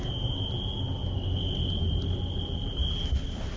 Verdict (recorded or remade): recorded